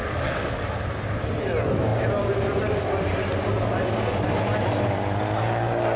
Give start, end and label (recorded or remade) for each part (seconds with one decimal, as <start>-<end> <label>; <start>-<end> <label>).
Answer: 0.0-6.0 recorded